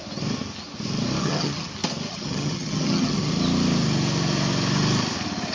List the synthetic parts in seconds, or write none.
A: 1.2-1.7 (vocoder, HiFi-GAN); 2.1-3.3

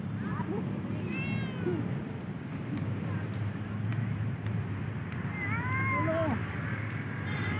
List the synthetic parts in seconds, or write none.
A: 2.0-4.8 (vocoder, BigVGAN v2)

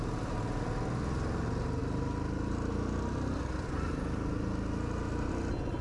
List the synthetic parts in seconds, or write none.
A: none

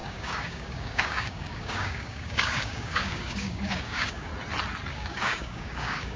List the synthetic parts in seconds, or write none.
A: 0.0-4.3 (codec, DAC); 4.9-6.2